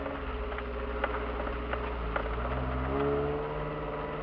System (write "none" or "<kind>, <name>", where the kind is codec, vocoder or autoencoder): none